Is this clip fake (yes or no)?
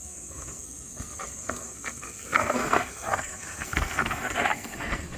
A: yes